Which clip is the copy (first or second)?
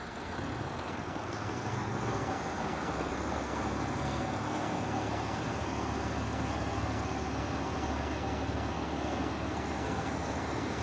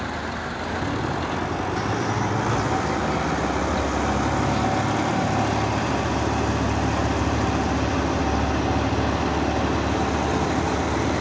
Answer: first